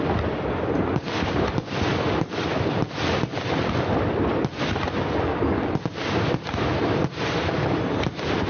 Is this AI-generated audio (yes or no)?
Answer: no